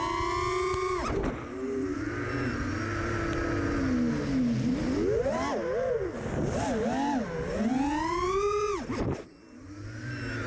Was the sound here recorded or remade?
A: recorded